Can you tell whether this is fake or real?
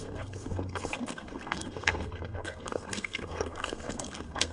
fake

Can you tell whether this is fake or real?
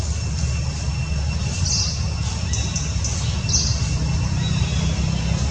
real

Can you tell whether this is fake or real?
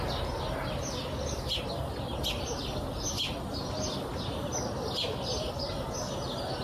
real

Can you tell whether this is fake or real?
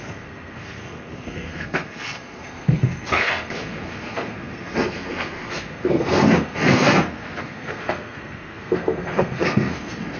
fake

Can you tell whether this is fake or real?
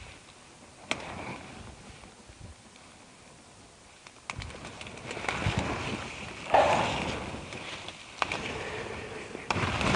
real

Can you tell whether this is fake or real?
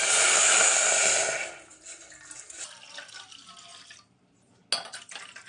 real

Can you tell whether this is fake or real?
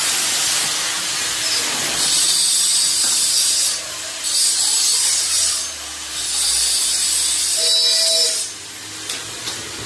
real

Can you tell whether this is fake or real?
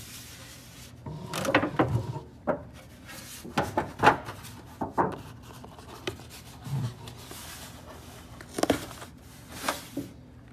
real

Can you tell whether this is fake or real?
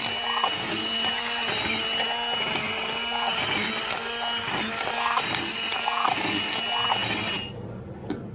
real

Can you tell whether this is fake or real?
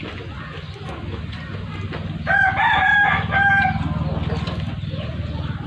real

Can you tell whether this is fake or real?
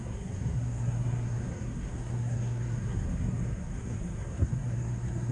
fake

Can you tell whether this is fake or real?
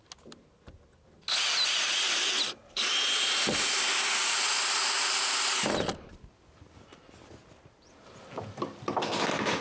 real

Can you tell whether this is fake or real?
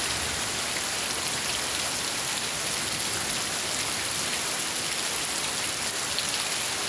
real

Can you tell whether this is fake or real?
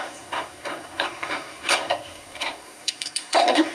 fake